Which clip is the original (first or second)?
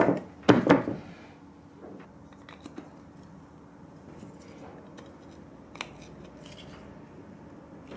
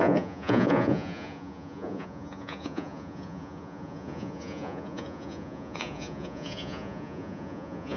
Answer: first